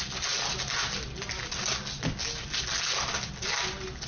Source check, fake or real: real